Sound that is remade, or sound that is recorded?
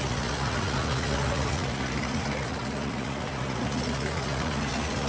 remade